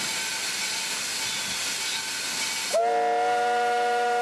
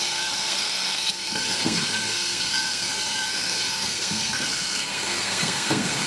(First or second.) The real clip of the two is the first